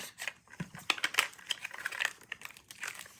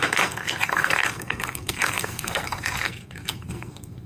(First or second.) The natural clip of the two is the first